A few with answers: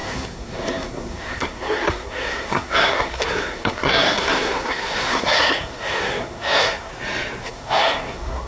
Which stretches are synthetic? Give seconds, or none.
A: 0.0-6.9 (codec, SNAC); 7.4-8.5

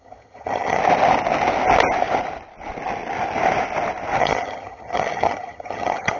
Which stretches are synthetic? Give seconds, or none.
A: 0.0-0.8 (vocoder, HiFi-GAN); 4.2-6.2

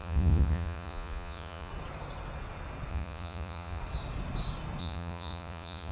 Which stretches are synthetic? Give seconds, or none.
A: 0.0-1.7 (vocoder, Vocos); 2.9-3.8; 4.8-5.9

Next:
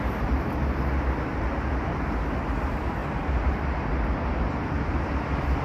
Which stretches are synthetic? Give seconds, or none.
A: none

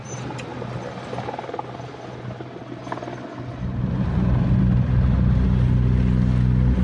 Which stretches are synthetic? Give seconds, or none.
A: none